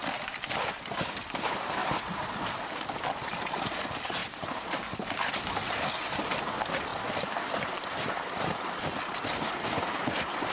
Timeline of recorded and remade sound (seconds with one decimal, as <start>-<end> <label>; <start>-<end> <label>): 0.0-1.8 recorded; 1.8-3.2 remade; 3.2-4.2 recorded; 4.2-4.8 remade; 4.8-6.9 recorded; 6.9-10.1 remade; 10.1-10.5 recorded